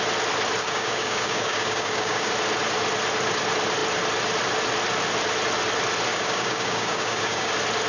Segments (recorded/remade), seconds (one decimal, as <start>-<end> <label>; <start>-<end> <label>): 0.0-0.6 recorded; 0.6-2.3 remade; 2.3-6.1 recorded; 6.1-7.5 remade; 7.5-7.9 recorded